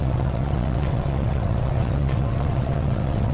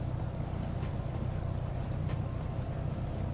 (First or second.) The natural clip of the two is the second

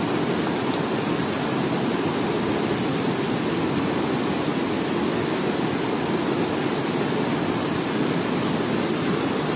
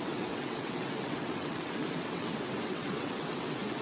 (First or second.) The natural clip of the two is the first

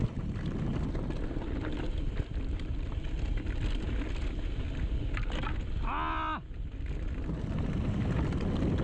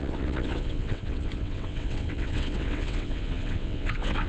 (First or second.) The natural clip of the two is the first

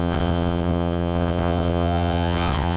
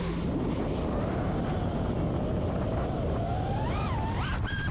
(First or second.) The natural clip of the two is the second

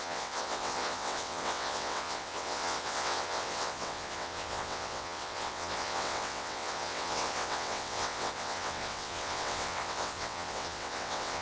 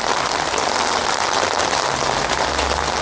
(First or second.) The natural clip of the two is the second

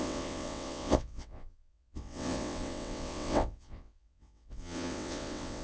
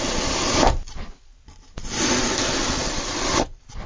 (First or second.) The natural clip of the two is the second